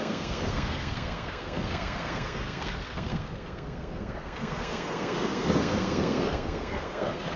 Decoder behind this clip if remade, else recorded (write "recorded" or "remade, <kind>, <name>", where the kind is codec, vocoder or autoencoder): remade, codec, SNAC